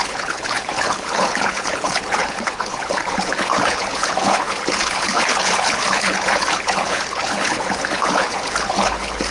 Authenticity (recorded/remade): remade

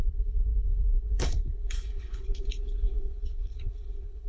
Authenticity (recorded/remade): remade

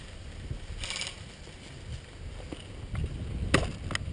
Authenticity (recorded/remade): recorded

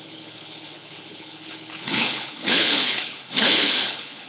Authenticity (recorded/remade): remade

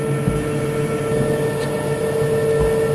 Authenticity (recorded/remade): recorded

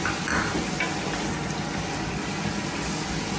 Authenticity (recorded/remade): recorded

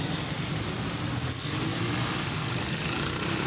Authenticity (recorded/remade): recorded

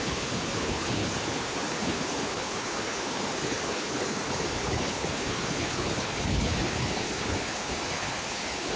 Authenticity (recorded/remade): remade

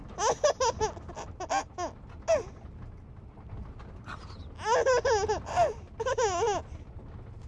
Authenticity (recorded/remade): recorded